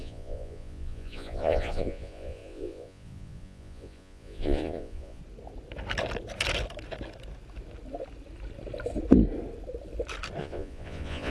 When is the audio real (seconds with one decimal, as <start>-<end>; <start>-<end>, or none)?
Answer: 5.2-10.4